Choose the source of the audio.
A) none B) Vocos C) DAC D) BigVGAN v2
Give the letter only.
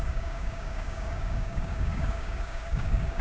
C